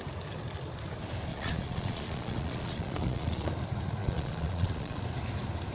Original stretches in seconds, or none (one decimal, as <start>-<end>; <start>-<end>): 0.0-1.3; 3.5-4.0; 5.0-5.7